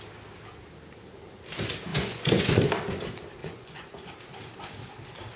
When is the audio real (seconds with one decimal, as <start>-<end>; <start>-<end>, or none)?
0.0-1.9; 2.6-3.4; 4.1-5.4